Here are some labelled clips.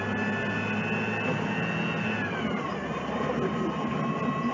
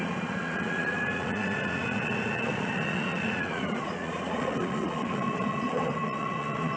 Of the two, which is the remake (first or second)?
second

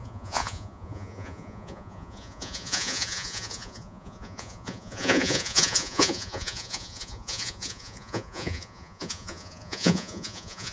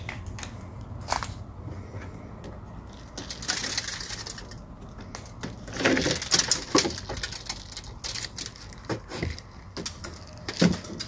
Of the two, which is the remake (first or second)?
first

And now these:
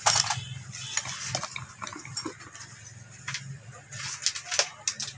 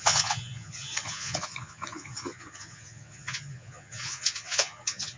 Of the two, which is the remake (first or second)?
second